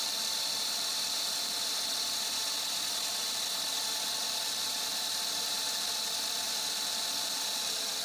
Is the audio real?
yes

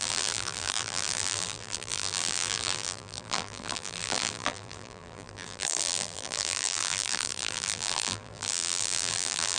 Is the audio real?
no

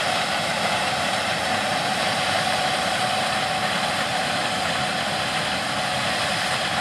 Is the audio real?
no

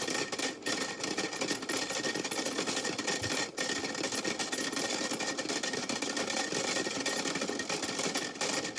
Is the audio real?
yes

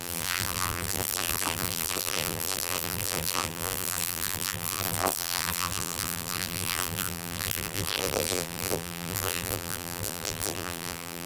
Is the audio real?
no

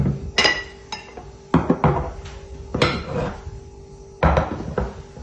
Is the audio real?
yes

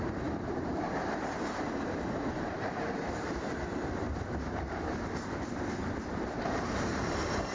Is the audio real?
no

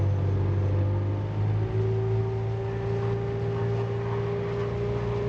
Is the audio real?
yes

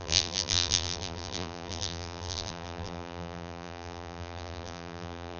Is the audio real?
no